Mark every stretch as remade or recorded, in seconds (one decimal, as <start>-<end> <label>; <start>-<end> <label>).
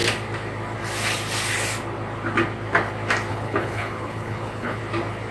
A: 0.0-3.3 recorded; 3.3-4.8 remade; 4.8-5.3 recorded